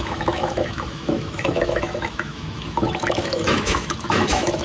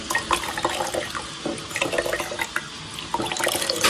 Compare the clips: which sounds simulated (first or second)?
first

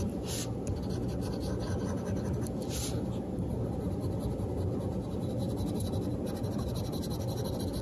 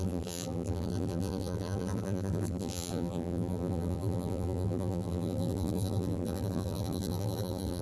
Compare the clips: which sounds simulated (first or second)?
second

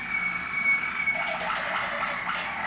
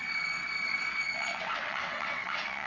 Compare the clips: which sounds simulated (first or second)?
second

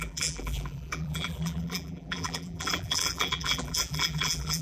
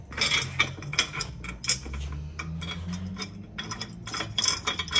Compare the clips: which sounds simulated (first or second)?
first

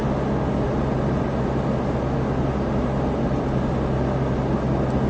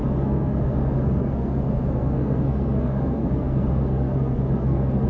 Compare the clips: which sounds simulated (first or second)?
second